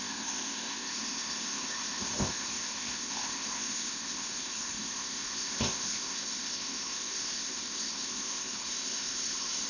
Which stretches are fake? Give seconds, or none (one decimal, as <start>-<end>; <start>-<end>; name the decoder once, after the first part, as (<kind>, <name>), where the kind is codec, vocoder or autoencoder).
0.0-9.7 (codec, ZipCodec)